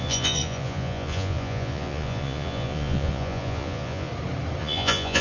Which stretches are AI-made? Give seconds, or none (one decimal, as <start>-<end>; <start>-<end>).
0.0-4.1; 4.6-5.2